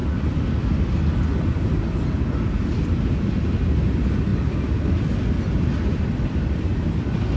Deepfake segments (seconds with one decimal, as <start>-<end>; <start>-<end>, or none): none